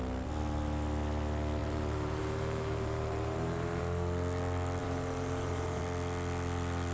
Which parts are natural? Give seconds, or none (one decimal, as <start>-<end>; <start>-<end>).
0.0-1.6; 3.8-4.8; 5.8-6.9